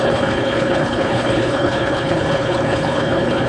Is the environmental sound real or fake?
fake